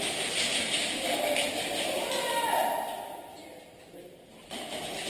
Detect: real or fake real